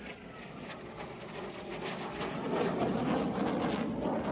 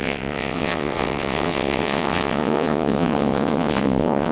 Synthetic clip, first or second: second